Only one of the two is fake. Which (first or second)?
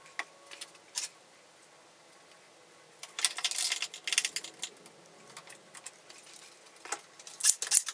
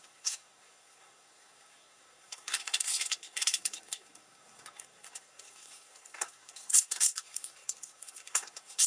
second